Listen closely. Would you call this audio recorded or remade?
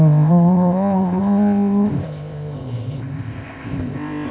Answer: remade